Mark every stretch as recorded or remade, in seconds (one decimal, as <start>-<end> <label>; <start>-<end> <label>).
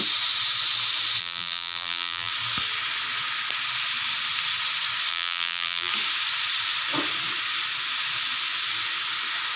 0.0-1.2 recorded; 1.2-2.3 remade; 2.3-5.1 recorded; 5.1-5.9 remade; 5.9-9.6 recorded